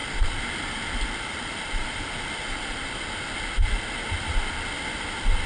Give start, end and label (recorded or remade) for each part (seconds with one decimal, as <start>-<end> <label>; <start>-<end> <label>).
0.0-5.5 recorded